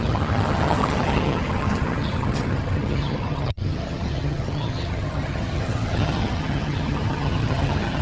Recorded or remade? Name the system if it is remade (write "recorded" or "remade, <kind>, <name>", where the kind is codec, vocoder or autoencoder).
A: remade, vocoder, HiFi-GAN